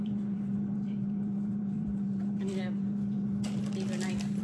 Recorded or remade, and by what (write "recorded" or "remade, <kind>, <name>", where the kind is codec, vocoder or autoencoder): remade, vocoder, BigVGAN v2